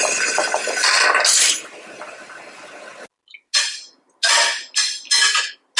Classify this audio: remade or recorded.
recorded